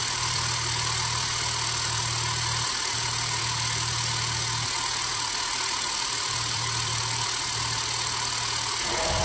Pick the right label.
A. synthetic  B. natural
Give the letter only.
B